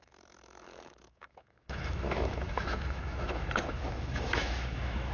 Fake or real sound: fake